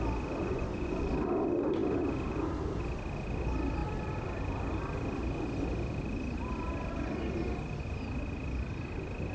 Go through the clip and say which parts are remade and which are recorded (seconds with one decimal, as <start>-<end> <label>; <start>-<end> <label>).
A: 0.0-0.4 recorded; 0.4-1.1 remade; 1.1-9.3 recorded